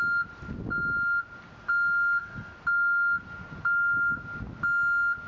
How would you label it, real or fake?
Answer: real